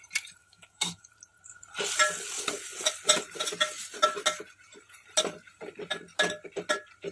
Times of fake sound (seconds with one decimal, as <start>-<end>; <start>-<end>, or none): 0.4-1.1